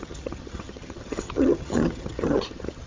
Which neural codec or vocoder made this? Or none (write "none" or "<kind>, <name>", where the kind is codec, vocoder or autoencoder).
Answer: vocoder, HiFi-GAN